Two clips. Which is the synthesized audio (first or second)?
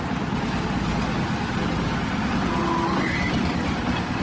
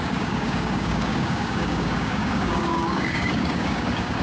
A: second